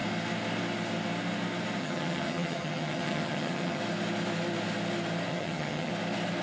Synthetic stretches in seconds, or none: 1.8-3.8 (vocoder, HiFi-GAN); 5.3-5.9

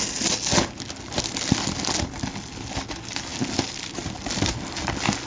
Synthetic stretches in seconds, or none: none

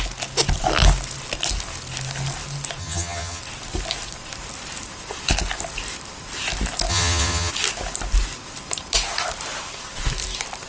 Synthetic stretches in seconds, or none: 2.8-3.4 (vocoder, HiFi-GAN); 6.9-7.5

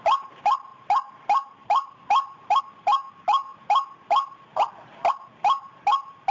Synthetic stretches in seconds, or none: none

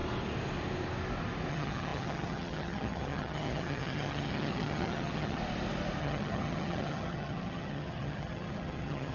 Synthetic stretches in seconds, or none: 1.5-5.4 (vocoder, HiFi-GAN); 6.0-9.1

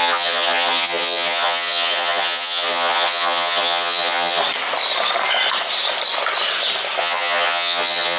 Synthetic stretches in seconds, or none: 0.0-4.4 (vocoder, HiFi-GAN); 7.0-8.2